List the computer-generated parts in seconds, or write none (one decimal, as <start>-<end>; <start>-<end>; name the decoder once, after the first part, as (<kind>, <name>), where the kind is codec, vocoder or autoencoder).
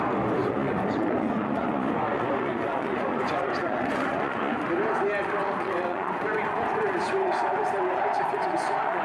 0.4-4.6 (vocoder, Vocos); 5.4-9.0